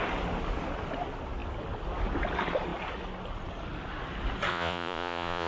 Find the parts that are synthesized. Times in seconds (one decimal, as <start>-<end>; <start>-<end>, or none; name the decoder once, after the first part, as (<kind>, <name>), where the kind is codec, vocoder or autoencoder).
4.5-5.5 (vocoder, Vocos)

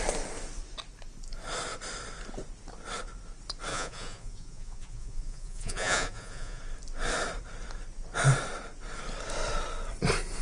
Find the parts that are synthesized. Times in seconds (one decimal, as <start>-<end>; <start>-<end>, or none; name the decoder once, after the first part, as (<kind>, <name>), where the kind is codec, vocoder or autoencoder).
3.7-6.6 (vocoder, Vocos)

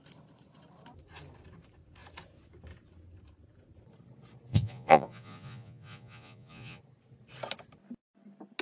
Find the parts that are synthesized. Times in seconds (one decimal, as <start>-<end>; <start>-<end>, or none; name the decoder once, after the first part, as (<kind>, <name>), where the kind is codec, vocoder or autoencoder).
4.5-6.8 (vocoder, Vocos)

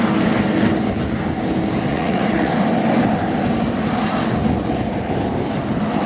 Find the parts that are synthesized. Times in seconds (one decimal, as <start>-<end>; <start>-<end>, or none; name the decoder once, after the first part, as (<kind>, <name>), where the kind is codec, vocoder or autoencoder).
1.9-2.5 (vocoder, Vocos)

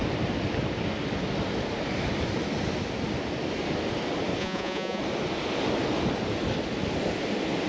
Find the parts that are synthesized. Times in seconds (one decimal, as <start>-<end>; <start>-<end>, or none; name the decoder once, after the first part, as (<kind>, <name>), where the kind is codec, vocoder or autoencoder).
4.4-5.0 (vocoder, Vocos)

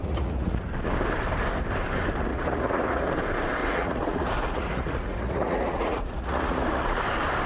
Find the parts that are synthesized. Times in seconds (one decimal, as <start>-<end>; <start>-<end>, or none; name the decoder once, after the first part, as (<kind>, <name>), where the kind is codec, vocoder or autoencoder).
0.0-0.7 (vocoder, Vocos); 2.3-3.1; 3.6-7.0

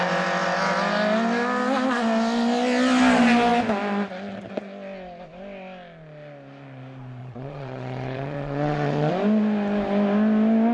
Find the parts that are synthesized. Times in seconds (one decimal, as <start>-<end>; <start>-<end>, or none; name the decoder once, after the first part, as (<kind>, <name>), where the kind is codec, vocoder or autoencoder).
7.2-9.1 (vocoder, Vocos)

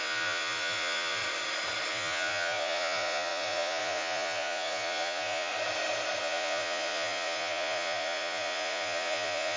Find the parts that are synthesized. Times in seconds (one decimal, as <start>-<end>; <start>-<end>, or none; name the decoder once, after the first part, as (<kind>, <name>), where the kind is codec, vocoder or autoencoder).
0.0-1.2 (vocoder, Vocos); 1.9-5.5; 6.2-9.6